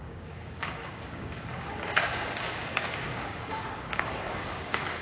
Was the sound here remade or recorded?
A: remade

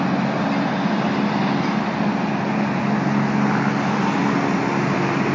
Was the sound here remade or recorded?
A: recorded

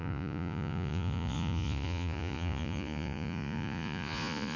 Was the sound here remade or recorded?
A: remade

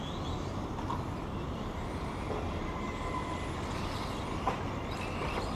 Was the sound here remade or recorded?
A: recorded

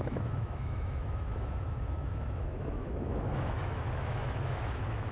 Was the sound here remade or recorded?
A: remade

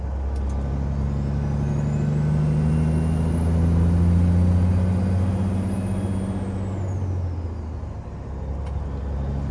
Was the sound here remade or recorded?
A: recorded